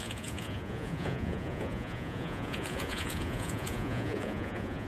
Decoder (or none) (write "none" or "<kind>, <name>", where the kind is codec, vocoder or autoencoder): vocoder, Vocos